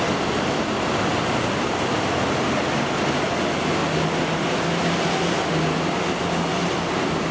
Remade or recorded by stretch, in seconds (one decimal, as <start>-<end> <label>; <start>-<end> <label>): 0.0-7.3 recorded